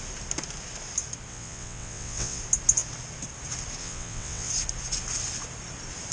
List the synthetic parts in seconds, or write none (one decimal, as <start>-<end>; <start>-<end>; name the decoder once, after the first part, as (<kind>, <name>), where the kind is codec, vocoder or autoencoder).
1.3-2.4 (vocoder, WaveNeXt); 3.8-4.5